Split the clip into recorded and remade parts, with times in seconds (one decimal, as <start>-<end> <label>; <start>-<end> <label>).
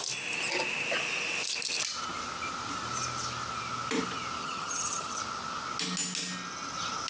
0.0-4.4 recorded; 4.4-5.2 remade; 5.2-7.1 recorded